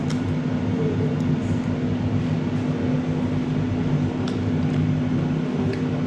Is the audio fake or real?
real